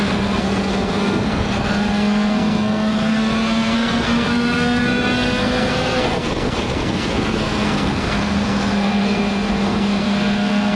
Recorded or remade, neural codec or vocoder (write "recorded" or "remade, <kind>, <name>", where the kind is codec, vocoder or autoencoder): remade, codec, SNAC